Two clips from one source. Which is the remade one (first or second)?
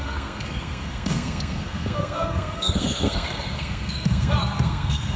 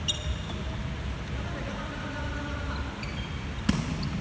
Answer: first